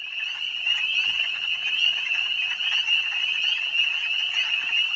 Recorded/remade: recorded